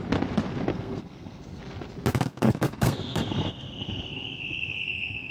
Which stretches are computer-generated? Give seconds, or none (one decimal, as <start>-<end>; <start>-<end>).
0.7-1.6; 2.1-5.3